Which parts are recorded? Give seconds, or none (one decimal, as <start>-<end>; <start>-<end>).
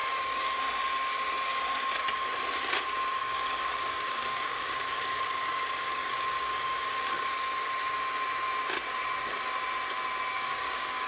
0.6-3.2; 7.3-10.3